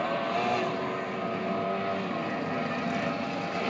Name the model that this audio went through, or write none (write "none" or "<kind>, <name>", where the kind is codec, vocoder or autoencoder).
none